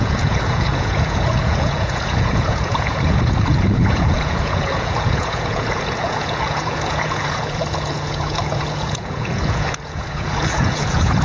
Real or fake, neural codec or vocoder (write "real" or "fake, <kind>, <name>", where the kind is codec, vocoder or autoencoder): fake, vocoder, Vocos